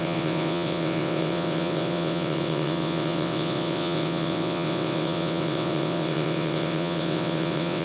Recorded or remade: remade